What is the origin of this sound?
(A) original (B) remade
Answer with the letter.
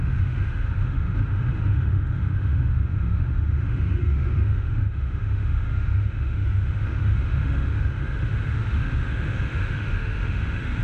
B